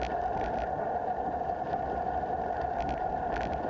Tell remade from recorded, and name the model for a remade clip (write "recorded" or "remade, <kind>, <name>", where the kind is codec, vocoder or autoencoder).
remade, vocoder, BigVGAN v2